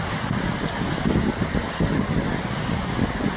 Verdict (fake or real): real